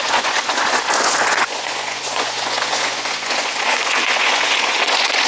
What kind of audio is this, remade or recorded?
remade